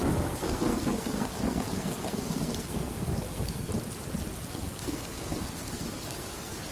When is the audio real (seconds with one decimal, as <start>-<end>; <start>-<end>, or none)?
3.7-4.5